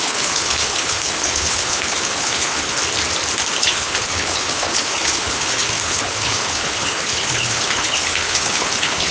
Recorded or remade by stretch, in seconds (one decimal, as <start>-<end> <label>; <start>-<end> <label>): 0.0-2.8 remade; 2.8-3.6 recorded; 3.6-9.1 remade